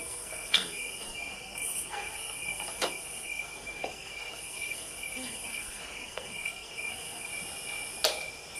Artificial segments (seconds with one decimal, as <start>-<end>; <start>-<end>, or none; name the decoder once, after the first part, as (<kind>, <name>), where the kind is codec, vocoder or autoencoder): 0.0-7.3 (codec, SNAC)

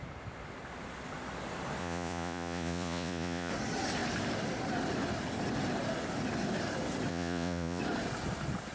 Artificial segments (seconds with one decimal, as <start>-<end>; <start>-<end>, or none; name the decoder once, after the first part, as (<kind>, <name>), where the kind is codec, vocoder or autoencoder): 1.8-3.5 (vocoder, Vocos); 7.1-7.8

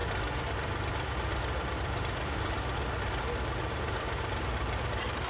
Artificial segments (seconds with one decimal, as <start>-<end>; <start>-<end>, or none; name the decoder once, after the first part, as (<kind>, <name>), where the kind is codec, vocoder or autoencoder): none

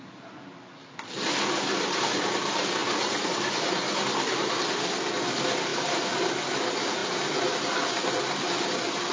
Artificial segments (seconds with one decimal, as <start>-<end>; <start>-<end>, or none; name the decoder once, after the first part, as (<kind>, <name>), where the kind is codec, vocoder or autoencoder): none

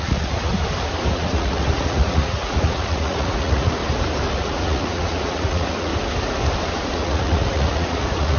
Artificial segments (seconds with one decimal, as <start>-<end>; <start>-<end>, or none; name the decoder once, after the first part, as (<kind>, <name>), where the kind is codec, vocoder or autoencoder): 0.0-0.5 (vocoder, Vocos); 1.1-3.8; 4.3-5.9; 6.7-8.4

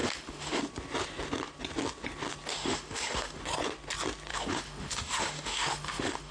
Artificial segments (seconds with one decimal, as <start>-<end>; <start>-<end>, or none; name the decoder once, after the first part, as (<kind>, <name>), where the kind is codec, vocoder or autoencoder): 0.0-0.6 (autoencoder, DAC-VAE); 2.5-3.4; 4.3-6.3

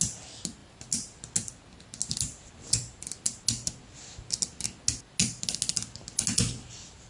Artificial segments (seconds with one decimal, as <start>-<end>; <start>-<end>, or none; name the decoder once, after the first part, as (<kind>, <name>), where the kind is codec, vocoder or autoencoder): none